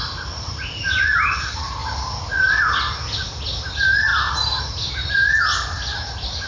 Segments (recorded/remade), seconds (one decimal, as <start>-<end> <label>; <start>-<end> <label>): 0.0-6.5 recorded